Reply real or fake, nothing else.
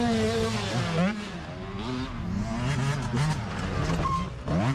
real